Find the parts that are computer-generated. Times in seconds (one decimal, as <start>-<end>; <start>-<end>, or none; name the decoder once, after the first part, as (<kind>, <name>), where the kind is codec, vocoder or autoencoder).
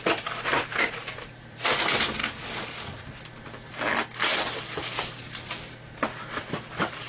0.0-0.5 (vocoder, BigVGAN v2); 1.2-2.2; 6.5-7.1